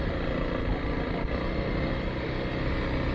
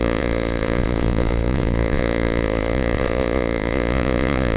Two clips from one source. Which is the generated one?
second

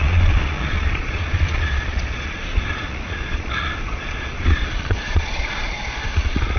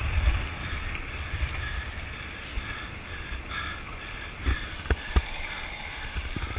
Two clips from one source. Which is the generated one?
first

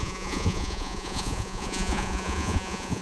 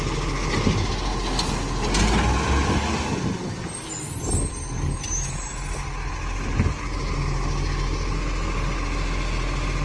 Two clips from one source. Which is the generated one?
first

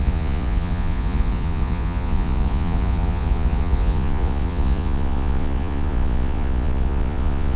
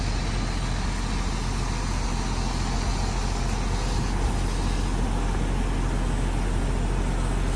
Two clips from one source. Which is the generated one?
first